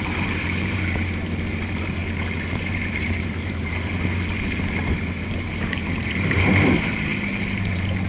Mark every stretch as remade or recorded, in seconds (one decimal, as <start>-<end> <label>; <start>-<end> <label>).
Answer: 0.0-8.1 remade